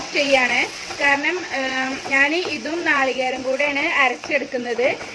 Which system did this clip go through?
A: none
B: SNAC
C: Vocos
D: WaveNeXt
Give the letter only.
D